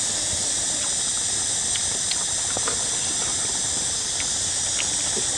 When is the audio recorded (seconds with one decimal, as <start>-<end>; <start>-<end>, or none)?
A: 0.0-5.4